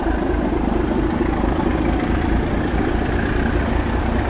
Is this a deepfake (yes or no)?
no